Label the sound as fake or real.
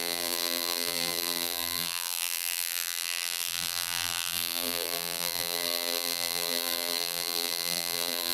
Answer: fake